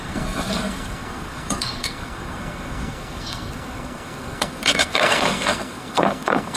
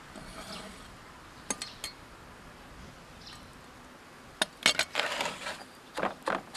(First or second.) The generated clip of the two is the first